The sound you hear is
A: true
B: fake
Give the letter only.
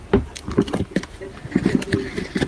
A